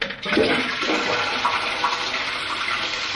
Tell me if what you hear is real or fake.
real